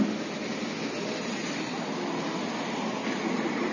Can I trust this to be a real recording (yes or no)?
yes